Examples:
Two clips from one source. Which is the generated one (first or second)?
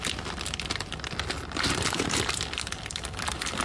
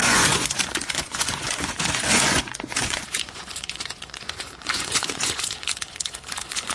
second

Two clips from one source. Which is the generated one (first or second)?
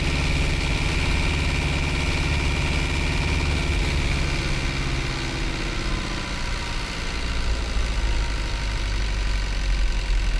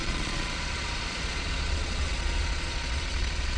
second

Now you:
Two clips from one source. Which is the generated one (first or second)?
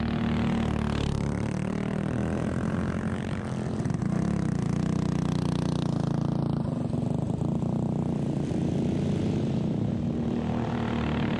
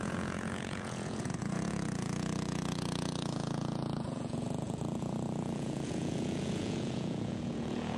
second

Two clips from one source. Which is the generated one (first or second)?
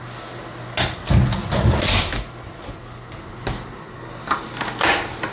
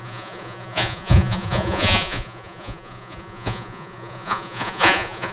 second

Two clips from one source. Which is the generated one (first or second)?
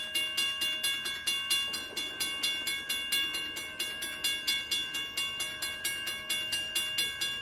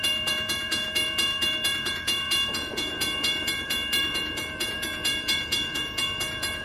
second